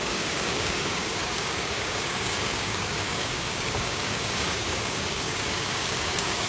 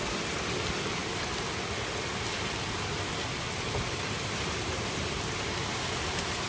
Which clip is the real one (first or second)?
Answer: second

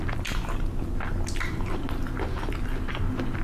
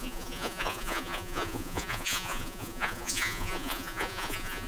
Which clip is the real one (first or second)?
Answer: first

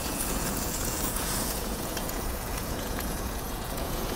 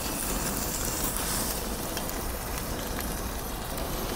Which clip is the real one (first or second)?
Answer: second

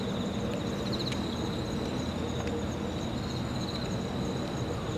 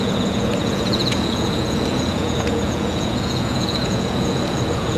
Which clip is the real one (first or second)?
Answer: first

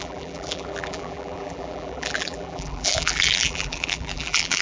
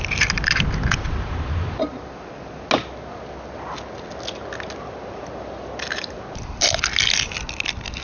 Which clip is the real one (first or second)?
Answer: second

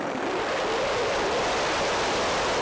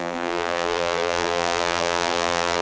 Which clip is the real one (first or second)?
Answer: first